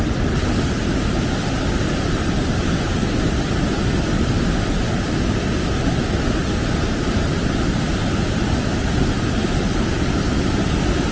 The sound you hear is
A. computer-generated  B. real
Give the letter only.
B